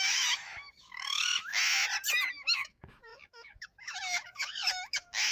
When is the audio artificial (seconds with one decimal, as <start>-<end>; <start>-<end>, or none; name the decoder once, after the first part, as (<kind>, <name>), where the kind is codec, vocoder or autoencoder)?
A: 0.0-1.5 (autoencoder, DAC-VAE); 2.3-5.3